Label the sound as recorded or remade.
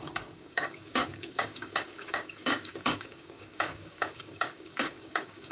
remade